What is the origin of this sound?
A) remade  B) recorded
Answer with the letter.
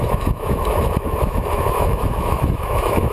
A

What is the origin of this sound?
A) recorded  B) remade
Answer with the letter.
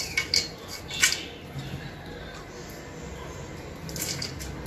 A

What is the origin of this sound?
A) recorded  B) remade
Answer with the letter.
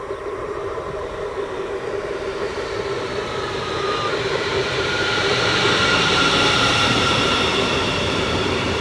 B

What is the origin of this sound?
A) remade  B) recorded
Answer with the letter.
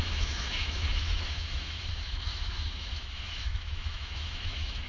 A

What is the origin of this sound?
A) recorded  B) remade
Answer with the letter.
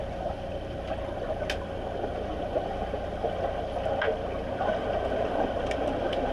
A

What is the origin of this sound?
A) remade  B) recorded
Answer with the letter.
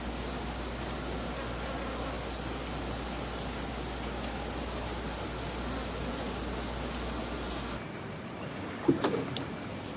B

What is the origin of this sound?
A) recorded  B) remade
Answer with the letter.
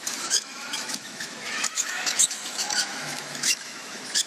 B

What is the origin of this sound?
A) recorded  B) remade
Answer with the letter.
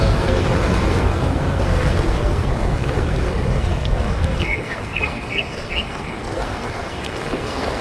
B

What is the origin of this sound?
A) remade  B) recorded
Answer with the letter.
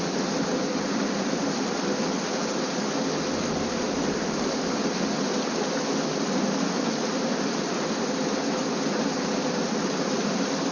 B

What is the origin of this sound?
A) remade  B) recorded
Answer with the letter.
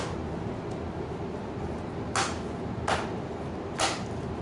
B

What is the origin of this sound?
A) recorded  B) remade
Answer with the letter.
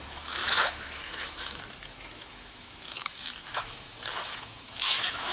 B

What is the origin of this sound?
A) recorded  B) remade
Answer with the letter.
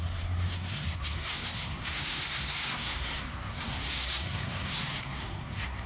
B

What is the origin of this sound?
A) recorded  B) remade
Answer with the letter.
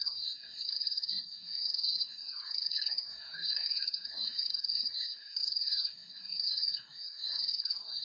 B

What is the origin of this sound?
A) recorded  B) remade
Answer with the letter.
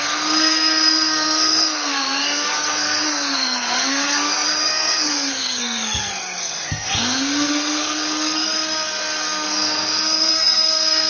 B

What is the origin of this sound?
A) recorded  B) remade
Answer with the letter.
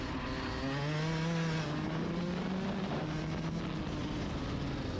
A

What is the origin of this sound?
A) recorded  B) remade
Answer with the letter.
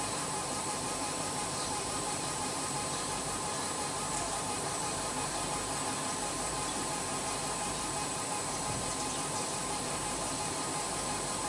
B